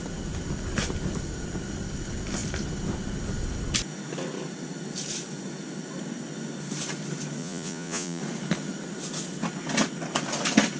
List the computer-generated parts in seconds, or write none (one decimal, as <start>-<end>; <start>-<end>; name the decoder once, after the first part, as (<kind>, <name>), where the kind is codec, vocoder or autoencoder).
7.4-8.2 (vocoder, Vocos)